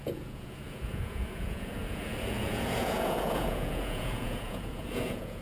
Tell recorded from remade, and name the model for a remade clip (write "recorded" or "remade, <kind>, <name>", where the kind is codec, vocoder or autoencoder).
remade, vocoder, Vocos